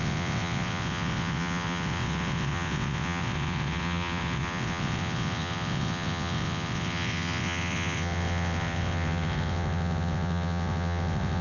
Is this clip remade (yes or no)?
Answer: yes